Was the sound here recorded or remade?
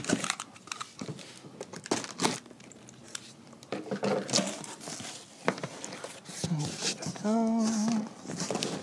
recorded